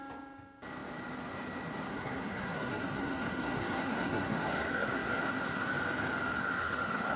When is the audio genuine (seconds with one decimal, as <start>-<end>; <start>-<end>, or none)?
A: 0.0-1.9; 5.7-6.4